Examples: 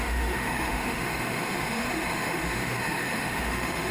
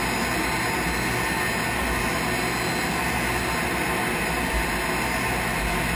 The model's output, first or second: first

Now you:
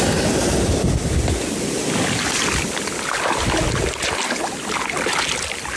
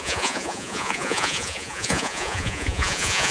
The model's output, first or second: second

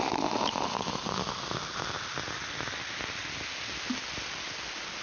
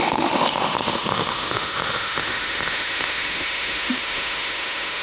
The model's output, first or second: second